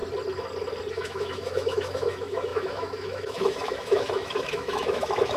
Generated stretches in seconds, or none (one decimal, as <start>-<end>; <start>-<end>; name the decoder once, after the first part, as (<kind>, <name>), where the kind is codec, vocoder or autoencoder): 0.9-5.4 (autoencoder, DAC-VAE)